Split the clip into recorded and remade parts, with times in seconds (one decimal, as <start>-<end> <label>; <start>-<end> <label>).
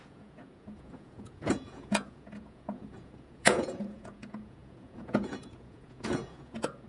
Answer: 0.0-6.9 remade